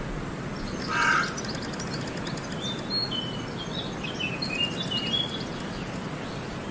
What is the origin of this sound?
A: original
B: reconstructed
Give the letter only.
A